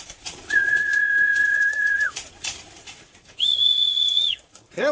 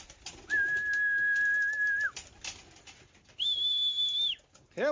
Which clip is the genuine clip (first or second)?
second